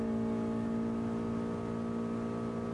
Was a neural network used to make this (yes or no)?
no